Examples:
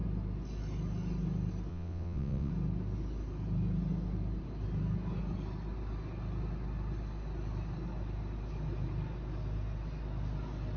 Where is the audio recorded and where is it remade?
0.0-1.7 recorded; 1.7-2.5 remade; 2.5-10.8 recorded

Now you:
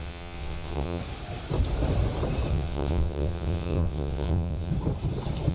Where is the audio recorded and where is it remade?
0.0-1.0 remade; 1.0-2.5 recorded; 2.5-4.7 remade; 4.7-5.5 recorded

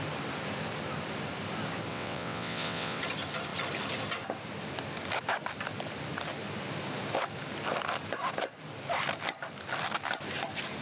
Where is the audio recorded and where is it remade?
0.0-1.9 recorded; 1.9-3.0 remade; 3.0-10.8 recorded

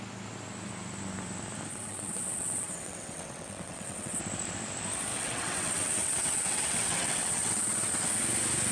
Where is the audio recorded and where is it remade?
0.0-1.7 recorded; 1.7-4.2 remade; 4.2-5.1 recorded; 5.1-8.1 remade; 8.1-8.7 recorded

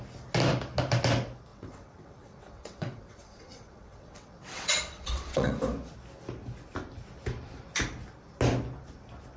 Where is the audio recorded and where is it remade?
0.0-1.5 recorded; 1.5-5.5 remade; 5.5-9.4 recorded